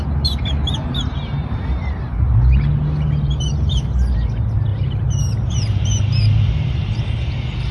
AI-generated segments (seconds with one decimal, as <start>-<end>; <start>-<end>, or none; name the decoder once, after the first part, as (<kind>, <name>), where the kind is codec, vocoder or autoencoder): 1.4-2.3 (vocoder, BigVGAN v2); 4.7-7.3